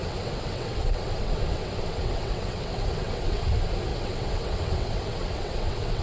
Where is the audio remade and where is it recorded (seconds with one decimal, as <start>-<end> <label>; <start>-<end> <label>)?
0.0-3.5 remade; 3.5-3.9 recorded; 3.9-6.0 remade